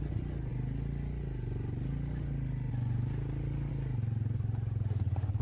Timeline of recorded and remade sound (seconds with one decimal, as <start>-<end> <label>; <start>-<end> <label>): 0.0-5.4 recorded